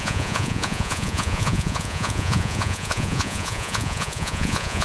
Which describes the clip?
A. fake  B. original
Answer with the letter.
A